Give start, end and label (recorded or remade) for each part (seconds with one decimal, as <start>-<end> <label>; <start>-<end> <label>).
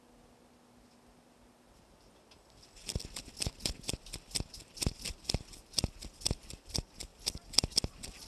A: 0.0-8.3 recorded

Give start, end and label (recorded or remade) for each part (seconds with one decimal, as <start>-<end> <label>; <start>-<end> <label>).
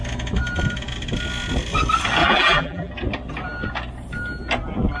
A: 0.0-2.2 recorded; 2.2-2.9 remade; 2.9-5.0 recorded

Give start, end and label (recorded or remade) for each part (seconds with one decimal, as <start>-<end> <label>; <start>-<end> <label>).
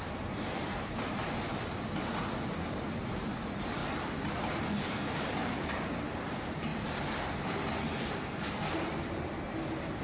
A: 0.0-1.5 remade; 1.5-3.0 recorded; 3.0-3.8 remade; 3.8-5.1 recorded; 5.1-6.7 remade; 6.7-9.0 recorded; 9.0-10.0 remade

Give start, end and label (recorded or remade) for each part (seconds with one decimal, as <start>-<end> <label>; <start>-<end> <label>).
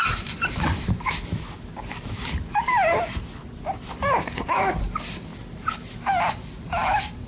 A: 0.0-1.2 remade; 1.2-4.2 recorded; 4.2-5.3 remade; 5.3-6.3 recorded; 6.3-7.3 remade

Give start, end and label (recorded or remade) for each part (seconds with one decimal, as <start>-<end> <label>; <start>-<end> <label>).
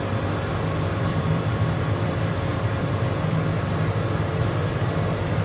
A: 0.0-1.1 recorded; 1.1-3.7 remade; 3.7-5.4 recorded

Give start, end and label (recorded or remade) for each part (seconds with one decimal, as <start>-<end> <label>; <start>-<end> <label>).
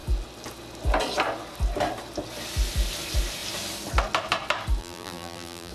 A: 0.0-4.8 recorded; 4.8-5.7 remade